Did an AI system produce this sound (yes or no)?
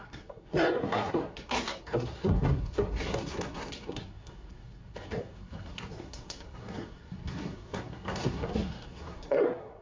yes